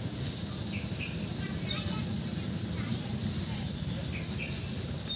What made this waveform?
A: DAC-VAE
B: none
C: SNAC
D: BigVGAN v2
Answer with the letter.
B